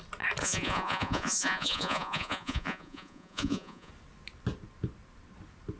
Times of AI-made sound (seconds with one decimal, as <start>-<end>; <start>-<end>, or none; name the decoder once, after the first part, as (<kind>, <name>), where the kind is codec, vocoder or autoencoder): 0.4-3.9 (vocoder, Vocos)